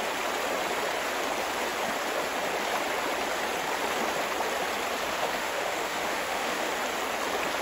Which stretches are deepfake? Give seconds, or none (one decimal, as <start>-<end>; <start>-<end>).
5.1-6.7